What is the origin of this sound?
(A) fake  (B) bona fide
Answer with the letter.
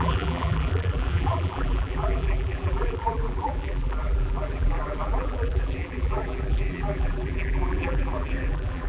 A